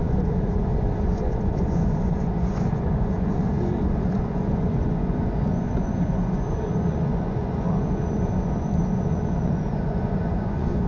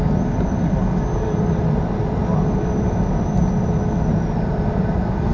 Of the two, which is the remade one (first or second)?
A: first